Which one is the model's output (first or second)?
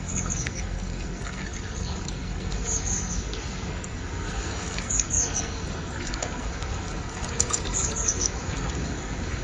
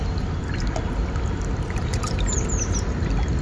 first